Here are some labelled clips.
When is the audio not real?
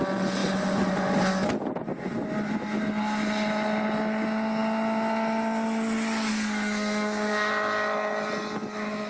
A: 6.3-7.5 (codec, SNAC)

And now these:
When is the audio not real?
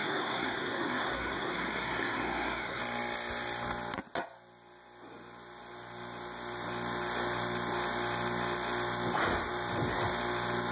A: 0.0-2.8 (codec, SNAC)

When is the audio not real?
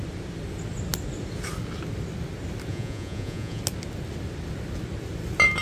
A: 2.7-3.6 (vocoder, Vocos)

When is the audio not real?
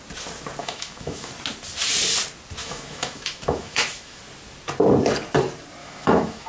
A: 0.6-1.3 (autoencoder, DAC-VAE); 2.6-4.2; 5.8-6.5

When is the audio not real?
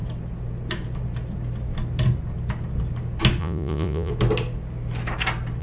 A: 3.4-4.1 (vocoder, Vocos)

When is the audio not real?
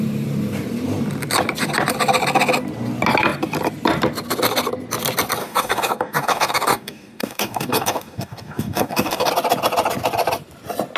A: 5.4-9.3 (codec, DAC)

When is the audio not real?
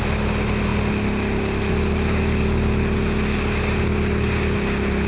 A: none